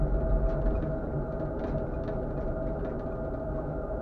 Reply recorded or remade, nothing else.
recorded